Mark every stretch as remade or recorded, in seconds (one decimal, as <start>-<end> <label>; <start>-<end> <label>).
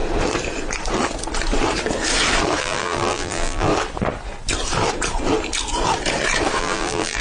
0.0-2.6 recorded; 2.6-3.7 remade; 3.7-6.6 recorded; 6.6-7.2 remade